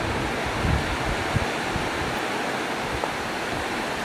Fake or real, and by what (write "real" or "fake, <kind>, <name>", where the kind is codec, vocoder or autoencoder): real